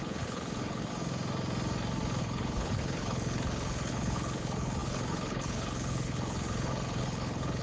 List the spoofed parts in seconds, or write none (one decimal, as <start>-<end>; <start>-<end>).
0.0-0.9; 2.2-7.6